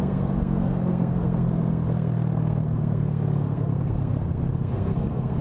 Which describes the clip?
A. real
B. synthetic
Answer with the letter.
B